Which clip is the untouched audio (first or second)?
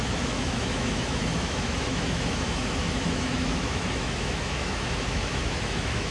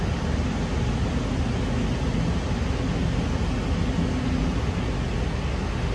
second